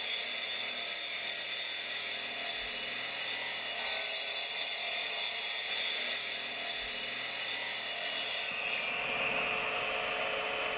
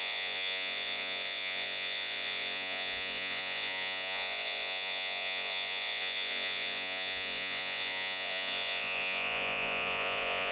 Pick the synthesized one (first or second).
second